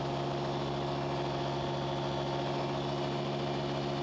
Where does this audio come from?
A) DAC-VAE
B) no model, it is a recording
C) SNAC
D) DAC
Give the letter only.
B